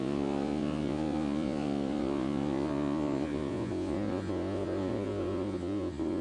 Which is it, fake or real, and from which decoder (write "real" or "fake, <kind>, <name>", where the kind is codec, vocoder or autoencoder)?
fake, vocoder, Vocos